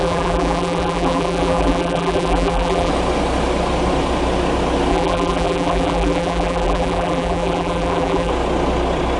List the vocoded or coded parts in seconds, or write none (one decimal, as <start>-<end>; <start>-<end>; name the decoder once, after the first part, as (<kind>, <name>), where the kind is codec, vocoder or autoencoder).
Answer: 0.0-2.9 (vocoder, BigVGAN v2); 4.9-8.3